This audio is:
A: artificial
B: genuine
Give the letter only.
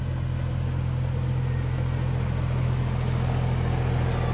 B